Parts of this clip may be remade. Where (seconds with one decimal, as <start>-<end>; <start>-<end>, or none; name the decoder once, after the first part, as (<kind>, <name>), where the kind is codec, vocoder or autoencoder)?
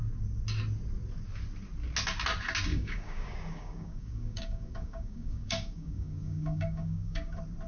2.7-7.3 (codec, DAC)